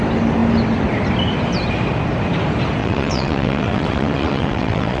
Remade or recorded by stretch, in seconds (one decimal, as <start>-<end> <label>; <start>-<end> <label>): 0.0-2.8 recorded; 2.8-5.0 remade